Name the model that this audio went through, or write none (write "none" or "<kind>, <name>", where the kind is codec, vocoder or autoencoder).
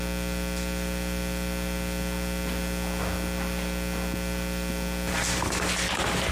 none